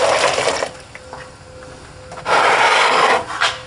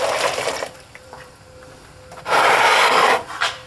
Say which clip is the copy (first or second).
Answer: second